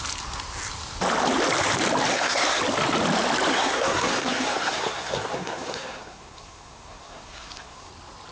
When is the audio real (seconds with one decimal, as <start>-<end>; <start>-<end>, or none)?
0.0-2.1; 2.6-3.5; 7.9-8.3